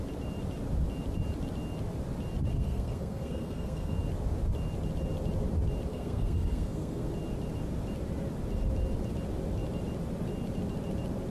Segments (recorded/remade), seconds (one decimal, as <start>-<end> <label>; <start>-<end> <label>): 0.0-2.5 recorded; 2.5-3.9 remade; 3.9-5.9 recorded; 5.9-7.1 remade; 7.1-11.3 recorded